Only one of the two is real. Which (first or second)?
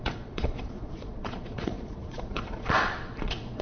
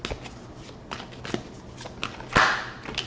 second